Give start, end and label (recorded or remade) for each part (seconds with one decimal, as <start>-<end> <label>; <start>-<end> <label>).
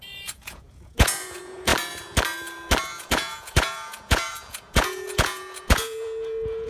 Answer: 0.0-1.7 remade; 1.7-2.8 recorded; 2.8-6.7 remade